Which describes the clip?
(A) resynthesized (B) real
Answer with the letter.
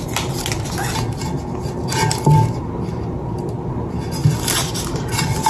B